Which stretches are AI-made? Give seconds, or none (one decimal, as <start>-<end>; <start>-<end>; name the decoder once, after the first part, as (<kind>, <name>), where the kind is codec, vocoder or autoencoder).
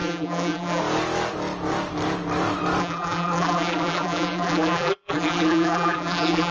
0.0-0.8 (vocoder, BigVGAN v2); 2.8-6.5